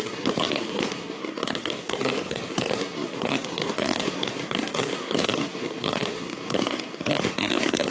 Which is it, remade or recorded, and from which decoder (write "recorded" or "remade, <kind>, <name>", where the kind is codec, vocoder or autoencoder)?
remade, codec, SNAC